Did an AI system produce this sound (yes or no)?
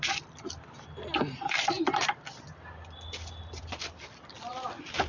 no